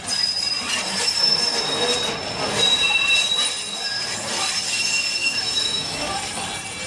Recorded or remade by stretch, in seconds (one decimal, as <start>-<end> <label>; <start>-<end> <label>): 0.0-5.2 recorded; 5.2-6.1 remade; 6.1-6.9 recorded